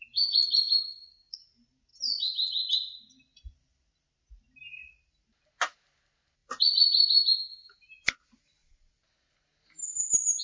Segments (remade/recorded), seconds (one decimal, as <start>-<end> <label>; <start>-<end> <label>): 0.0-10.4 recorded